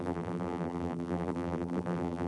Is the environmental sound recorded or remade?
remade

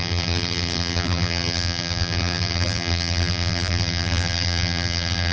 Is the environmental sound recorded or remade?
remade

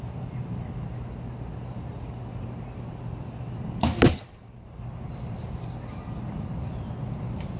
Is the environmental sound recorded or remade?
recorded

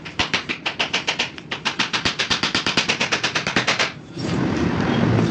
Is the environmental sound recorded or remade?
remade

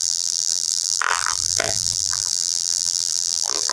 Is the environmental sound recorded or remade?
remade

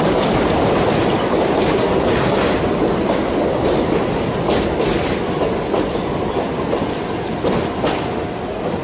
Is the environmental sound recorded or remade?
recorded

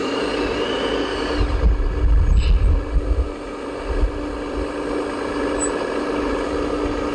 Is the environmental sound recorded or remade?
recorded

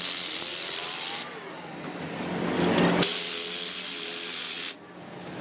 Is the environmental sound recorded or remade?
recorded